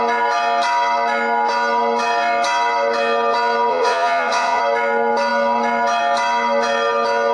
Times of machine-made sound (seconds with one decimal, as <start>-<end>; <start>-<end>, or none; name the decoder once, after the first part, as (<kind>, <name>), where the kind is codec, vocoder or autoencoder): 3.7-4.6 (vocoder, Vocos)